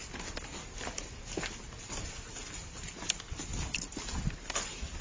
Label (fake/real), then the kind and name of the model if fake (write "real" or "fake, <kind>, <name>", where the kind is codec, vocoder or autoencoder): real